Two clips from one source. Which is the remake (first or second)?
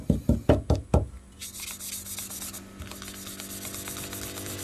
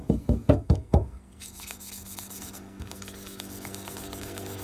second